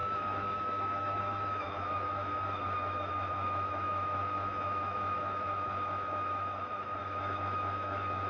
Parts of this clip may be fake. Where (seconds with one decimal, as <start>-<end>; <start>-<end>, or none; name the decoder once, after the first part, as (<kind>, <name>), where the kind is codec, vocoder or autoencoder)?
0.0-8.3 (autoencoder, DAC-VAE)